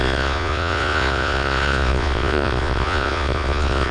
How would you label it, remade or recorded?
remade